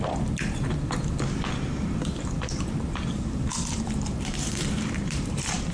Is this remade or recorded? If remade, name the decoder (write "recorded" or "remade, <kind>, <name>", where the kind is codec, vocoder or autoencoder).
remade, vocoder, BigVGAN v2